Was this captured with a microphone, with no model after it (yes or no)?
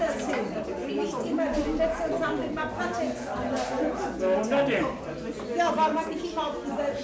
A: yes